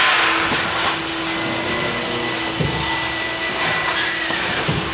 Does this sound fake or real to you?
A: fake